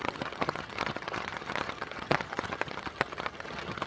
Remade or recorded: remade